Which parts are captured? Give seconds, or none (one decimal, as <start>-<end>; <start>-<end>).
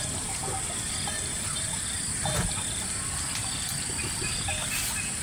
0.0-5.2